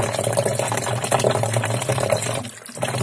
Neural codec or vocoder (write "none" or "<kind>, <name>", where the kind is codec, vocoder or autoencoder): none